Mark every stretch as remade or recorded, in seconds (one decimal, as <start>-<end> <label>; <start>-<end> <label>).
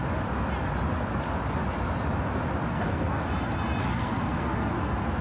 0.0-2.7 recorded; 2.7-3.2 remade; 3.2-3.8 recorded; 3.8-4.7 remade; 4.7-5.2 recorded